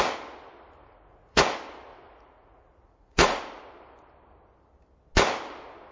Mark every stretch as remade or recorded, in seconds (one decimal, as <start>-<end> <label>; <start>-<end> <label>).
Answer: 0.0-0.8 recorded; 0.8-1.4 remade; 1.4-1.9 recorded; 1.9-3.6 remade; 3.6-5.9 recorded